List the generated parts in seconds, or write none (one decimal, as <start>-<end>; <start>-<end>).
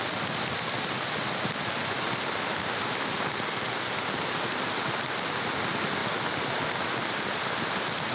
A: none